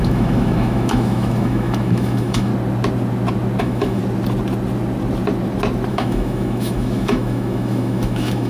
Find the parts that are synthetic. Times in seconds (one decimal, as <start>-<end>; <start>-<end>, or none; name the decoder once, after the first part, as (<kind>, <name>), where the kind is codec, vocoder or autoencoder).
0.0-2.5 (autoencoder, DAC-VAE); 3.6-4.0; 5.9-8.5